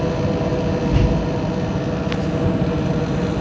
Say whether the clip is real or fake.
real